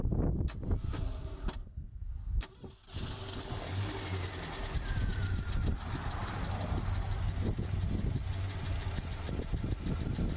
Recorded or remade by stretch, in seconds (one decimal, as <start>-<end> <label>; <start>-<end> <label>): 0.0-1.6 recorded; 1.6-2.1 remade; 2.1-10.4 recorded